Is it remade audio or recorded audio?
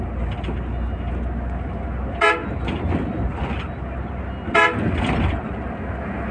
recorded